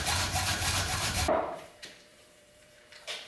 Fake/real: fake